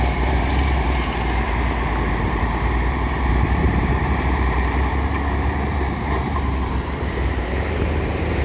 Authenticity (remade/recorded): remade